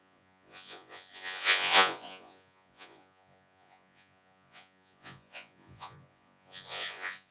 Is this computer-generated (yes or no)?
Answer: yes